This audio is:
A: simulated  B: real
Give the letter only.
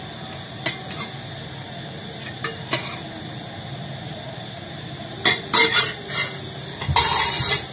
B